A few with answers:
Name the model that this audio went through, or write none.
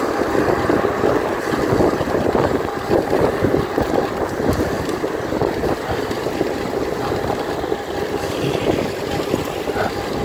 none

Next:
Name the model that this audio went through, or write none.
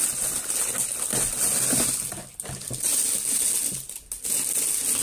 none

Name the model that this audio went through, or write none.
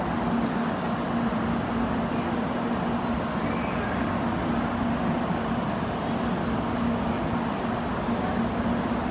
none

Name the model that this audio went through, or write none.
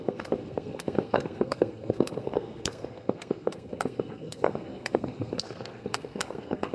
codec, SNAC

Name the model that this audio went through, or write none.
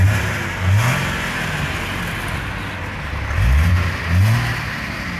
none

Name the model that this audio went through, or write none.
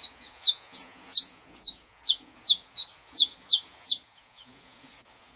vocoder, Vocos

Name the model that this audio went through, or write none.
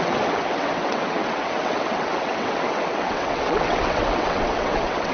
vocoder, WaveNeXt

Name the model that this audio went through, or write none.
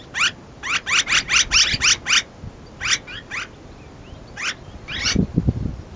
none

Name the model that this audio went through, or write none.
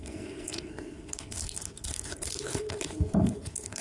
codec, SNAC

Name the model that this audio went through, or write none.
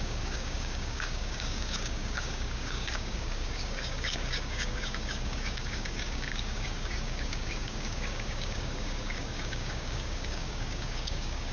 codec, DAC